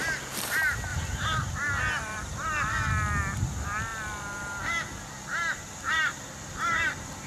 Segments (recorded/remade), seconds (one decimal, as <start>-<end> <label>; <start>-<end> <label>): 0.0-7.3 recorded